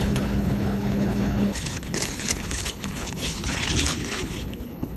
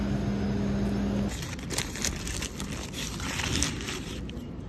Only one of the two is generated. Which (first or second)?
first